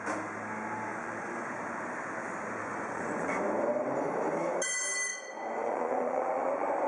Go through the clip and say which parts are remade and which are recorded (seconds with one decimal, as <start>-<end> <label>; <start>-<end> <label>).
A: 0.0-0.9 recorded; 0.9-1.5 remade; 1.5-2.6 recorded; 2.6-3.3 remade; 3.3-5.1 recorded; 5.1-6.9 remade